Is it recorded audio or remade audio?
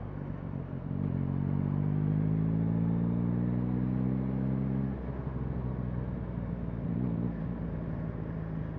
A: recorded